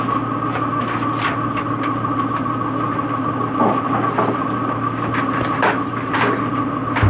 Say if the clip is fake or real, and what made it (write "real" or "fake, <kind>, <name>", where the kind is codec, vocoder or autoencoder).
real